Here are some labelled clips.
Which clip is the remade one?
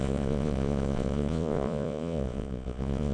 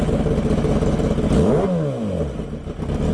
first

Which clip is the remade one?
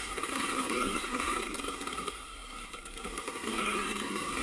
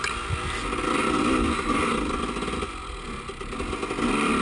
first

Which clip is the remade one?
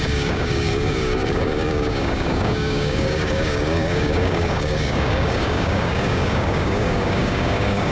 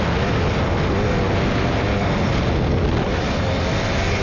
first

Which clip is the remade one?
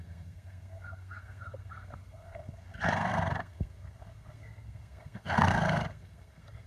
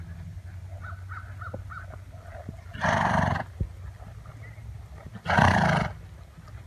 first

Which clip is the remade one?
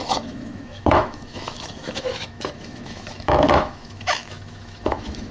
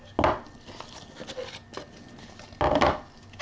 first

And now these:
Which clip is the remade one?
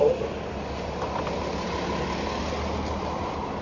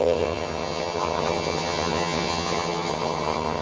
second